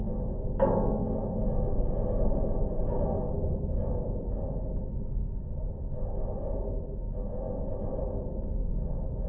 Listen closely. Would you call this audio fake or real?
real